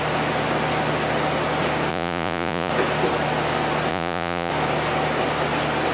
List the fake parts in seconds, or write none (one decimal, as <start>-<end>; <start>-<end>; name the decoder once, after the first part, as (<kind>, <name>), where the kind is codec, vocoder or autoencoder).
1.9-2.7 (vocoder, Vocos); 3.9-4.5